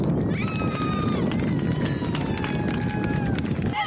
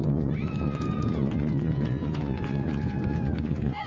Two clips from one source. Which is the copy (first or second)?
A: second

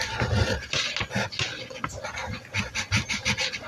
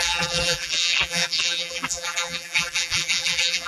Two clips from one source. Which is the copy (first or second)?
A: second